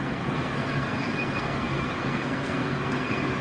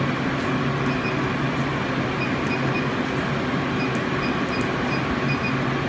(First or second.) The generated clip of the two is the first